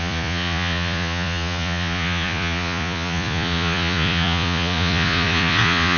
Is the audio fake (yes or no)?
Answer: yes